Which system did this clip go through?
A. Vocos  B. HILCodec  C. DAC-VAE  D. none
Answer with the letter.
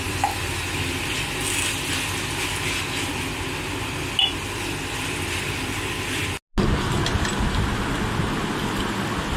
D